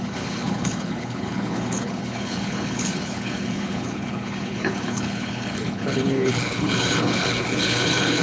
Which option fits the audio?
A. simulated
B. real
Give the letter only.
A